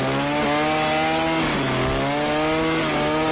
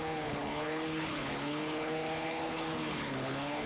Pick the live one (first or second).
first